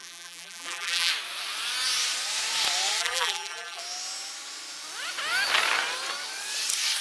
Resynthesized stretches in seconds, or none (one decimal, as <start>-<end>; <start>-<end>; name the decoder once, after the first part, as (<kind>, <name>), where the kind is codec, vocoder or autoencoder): 0.0-1.1 (vocoder, BigVGAN v2); 3.0-3.8